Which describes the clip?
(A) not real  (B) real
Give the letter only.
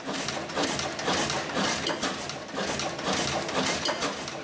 B